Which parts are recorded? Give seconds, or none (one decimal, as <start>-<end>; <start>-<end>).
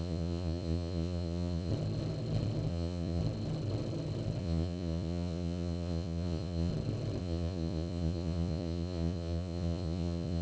1.7-2.7; 3.2-4.4; 6.7-7.2